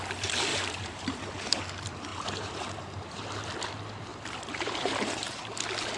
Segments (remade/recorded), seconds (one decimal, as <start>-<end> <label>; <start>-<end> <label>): 0.0-0.5 recorded; 0.5-1.6 remade; 1.6-2.1 recorded; 2.1-3.2 remade; 3.2-4.1 recorded; 4.1-5.4 remade; 5.4-6.0 recorded